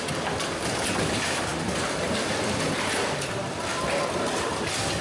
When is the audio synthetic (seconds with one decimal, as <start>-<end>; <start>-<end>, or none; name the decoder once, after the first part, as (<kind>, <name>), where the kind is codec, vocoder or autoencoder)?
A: 1.5-4.5 (vocoder, BigVGAN v2)